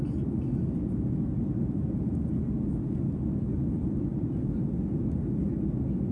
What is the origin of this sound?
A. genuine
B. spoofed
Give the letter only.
A